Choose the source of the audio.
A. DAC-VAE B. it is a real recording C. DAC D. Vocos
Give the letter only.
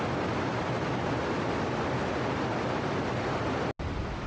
B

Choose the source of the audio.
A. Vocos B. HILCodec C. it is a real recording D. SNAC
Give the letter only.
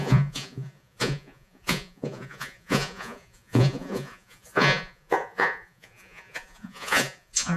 A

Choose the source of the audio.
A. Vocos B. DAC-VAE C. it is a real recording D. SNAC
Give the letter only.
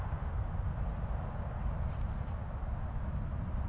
C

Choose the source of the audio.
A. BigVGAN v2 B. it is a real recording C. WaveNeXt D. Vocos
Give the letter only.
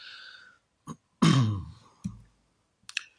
B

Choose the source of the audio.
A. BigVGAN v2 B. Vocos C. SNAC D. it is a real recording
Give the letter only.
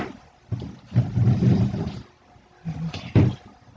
D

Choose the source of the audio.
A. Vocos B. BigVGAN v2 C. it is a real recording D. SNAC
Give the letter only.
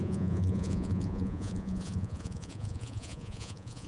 A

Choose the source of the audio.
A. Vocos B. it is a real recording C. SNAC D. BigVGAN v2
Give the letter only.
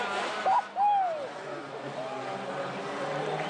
B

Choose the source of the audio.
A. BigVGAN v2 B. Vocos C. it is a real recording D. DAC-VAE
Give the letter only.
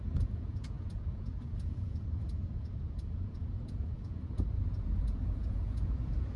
B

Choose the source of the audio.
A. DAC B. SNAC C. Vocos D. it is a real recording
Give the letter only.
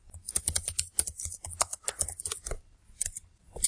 D